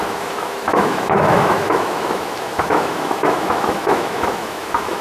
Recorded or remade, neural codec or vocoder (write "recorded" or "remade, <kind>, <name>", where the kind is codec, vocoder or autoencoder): remade, autoencoder, DAC-VAE